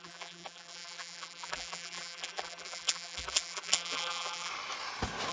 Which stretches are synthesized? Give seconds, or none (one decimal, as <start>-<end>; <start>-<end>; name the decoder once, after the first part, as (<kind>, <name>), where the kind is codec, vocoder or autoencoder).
0.0-4.5 (vocoder, BigVGAN v2)